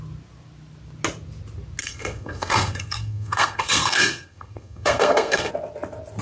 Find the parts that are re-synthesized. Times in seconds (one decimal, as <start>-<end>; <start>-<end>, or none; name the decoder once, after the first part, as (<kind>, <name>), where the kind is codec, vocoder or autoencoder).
1.8-5.5 (codec, SNAC)